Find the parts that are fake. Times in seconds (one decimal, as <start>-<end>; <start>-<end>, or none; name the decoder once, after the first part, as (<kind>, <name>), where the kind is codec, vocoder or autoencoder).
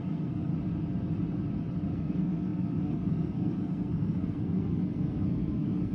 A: 0.0-0.5 (codec, SNAC); 1.9-5.9